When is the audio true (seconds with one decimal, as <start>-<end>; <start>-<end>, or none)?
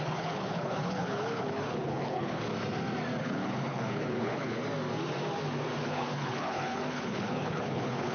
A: 2.5-3.2; 4.6-5.8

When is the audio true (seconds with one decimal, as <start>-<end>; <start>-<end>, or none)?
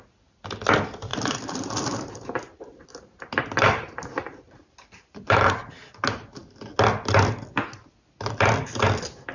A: 0.0-1.1; 5.7-9.3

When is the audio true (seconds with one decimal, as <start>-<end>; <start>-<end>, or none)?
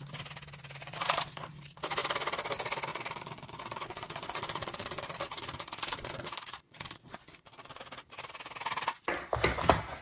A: 0.0-0.8; 1.4-2.9; 7.8-10.0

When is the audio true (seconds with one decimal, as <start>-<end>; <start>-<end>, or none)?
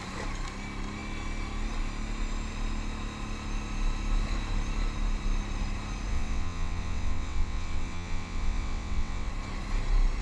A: 0.0-6.1; 9.3-10.2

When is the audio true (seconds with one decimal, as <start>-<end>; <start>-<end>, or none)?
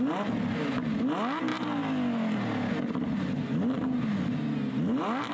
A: 0.0-5.3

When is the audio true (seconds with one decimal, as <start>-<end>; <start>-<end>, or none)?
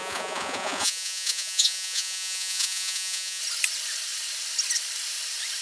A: 3.4-5.6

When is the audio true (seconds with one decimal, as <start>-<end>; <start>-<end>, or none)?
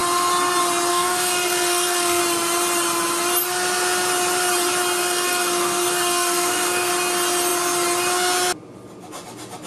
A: 0.0-0.9; 2.2-5.0; 6.9-9.7